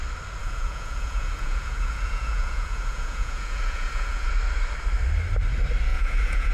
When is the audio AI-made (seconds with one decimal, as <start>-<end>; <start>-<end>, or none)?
0.4-4.3; 5.9-6.5